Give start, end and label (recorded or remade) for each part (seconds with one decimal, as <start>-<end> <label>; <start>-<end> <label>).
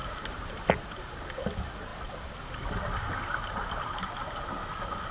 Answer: 0.0-0.7 remade; 0.7-1.9 recorded; 1.9-4.4 remade; 4.4-5.1 recorded